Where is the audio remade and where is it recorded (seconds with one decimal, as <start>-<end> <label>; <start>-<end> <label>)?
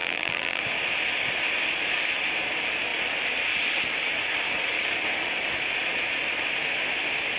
0.0-0.6 remade; 0.6-7.4 recorded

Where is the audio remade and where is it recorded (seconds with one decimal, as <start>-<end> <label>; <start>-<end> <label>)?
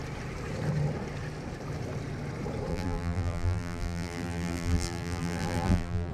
0.0-2.7 recorded; 2.7-6.1 remade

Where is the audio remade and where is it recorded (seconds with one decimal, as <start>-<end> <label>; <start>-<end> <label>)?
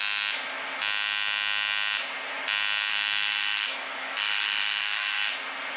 0.0-2.9 recorded; 2.9-5.3 remade; 5.3-5.8 recorded